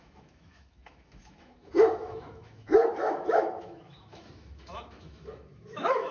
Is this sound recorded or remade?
remade